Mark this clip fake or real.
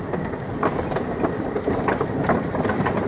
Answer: real